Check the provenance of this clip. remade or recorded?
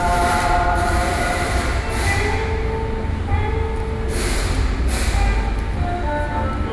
recorded